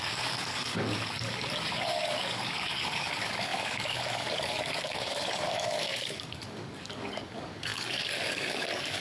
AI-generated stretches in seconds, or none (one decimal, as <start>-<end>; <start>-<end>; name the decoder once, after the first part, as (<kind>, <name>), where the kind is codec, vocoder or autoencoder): 0.0-9.0 (codec, DAC)